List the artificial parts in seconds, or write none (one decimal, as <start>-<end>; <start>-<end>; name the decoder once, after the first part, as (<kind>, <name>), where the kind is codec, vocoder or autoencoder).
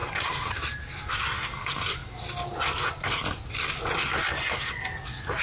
none